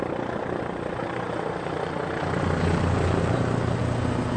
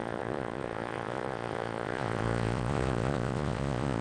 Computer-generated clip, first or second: second